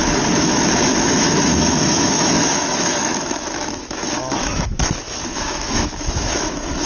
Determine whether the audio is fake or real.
fake